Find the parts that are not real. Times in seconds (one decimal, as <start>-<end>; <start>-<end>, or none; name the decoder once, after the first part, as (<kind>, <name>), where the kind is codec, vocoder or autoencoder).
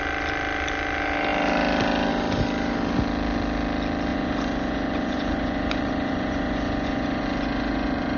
4.1-8.2 (vocoder, Vocos)